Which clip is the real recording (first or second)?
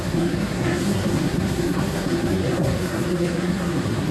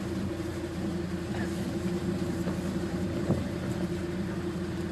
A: second